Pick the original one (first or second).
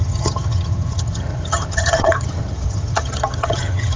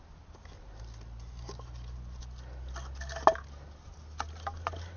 second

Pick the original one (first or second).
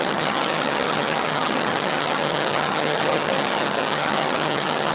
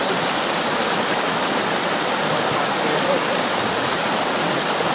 second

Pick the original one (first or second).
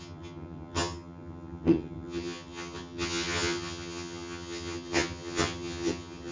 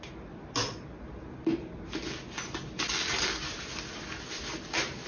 second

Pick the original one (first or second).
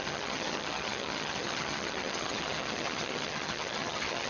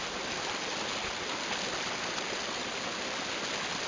second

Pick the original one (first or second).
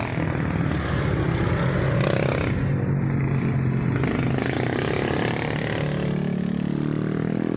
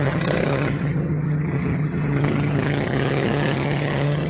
first